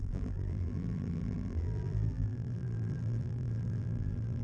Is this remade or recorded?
remade